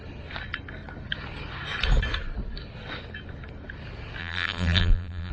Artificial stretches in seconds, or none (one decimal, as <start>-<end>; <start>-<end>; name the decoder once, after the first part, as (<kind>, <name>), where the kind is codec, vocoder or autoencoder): 4.2-5.3 (vocoder, BigVGAN v2)